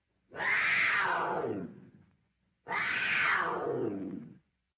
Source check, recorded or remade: remade